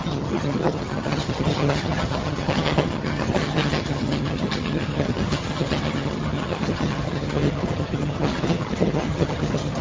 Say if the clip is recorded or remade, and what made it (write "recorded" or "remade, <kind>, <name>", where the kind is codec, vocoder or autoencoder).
remade, vocoder, HiFi-GAN